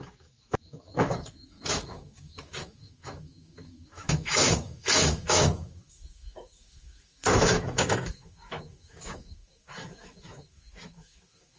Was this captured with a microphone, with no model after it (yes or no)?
no